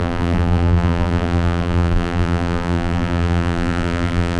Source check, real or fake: fake